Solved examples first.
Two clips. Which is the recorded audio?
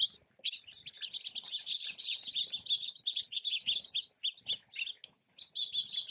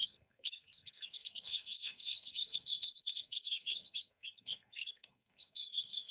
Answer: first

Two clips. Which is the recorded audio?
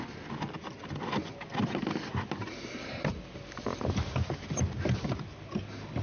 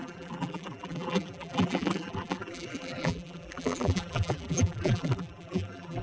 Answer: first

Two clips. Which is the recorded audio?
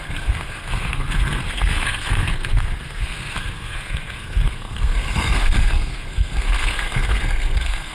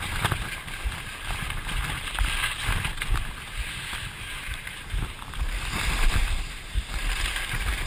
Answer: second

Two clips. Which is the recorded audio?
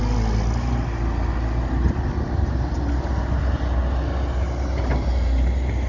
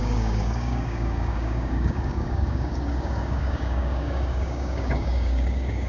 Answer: first